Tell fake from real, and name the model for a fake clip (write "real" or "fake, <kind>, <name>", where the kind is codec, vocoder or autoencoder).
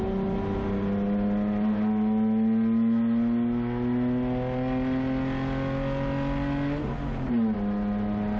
real